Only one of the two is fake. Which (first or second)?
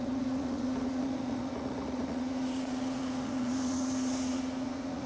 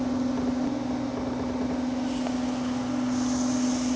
first